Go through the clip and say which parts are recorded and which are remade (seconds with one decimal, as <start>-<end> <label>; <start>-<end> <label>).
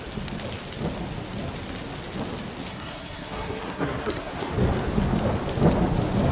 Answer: 0.0-2.7 recorded; 2.7-4.3 remade; 4.3-6.3 recorded